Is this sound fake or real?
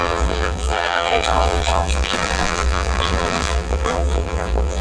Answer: fake